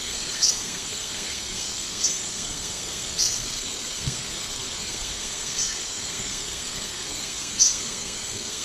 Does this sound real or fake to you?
fake